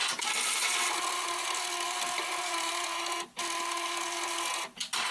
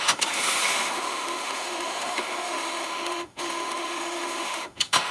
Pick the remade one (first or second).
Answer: second